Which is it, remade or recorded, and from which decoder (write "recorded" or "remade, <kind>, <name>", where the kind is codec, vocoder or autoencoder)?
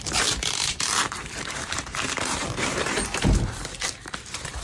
remade, vocoder, BigVGAN v2